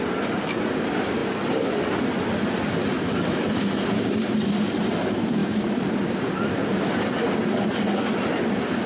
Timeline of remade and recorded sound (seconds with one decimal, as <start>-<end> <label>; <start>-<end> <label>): 0.0-8.9 recorded